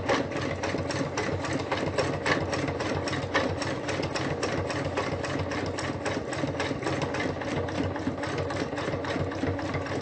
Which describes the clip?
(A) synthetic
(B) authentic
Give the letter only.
B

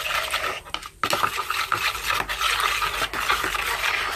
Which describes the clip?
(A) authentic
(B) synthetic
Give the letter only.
A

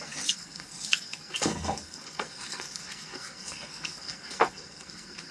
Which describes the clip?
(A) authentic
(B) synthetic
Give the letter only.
B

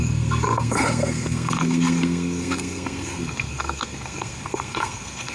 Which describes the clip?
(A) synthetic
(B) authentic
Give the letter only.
A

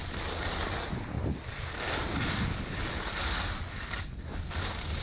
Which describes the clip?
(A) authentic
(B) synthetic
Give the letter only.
A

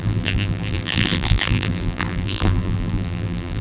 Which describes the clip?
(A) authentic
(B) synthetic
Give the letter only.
B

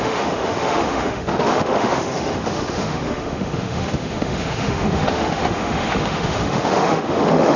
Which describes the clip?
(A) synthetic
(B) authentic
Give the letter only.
A